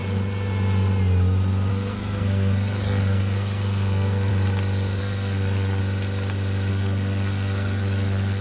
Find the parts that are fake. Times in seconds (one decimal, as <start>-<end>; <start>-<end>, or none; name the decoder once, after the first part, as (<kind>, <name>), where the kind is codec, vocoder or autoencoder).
1.7-4.3 (codec, SNAC); 5.0-5.8; 6.7-8.4